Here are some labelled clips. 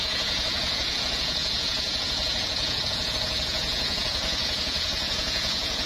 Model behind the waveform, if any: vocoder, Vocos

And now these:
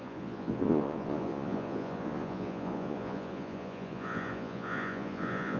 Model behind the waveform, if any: vocoder, Vocos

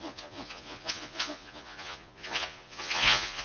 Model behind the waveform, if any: vocoder, Vocos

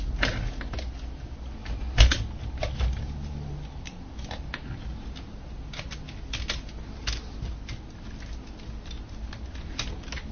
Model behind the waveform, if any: none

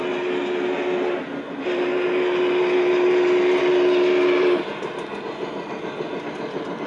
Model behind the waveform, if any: none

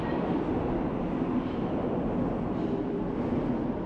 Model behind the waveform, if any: none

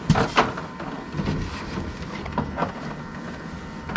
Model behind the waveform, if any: none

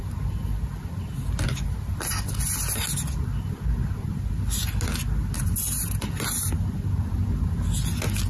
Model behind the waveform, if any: none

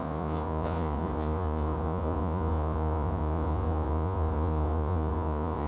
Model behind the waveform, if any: vocoder, Vocos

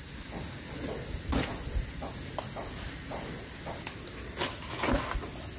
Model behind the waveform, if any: none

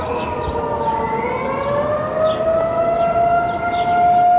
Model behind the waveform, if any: none